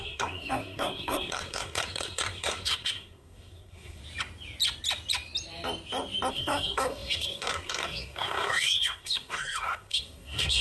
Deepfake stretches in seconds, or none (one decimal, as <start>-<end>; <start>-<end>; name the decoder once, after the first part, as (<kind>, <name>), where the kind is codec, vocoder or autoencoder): 0.0-4.0 (codec, SNAC); 6.3-10.6